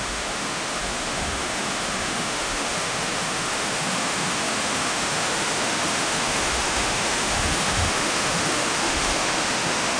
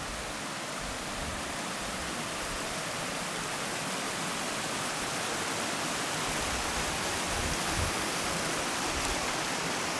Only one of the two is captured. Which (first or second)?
second